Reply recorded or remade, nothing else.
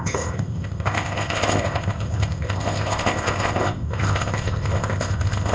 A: remade